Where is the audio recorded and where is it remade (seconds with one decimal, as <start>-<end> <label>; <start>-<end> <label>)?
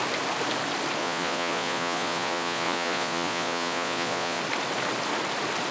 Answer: 0.0-1.0 recorded; 1.0-4.4 remade; 4.4-5.7 recorded